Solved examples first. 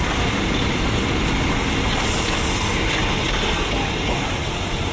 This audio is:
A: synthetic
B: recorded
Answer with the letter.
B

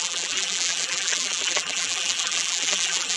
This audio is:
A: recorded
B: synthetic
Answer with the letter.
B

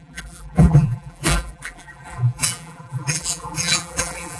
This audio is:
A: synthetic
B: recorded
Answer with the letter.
A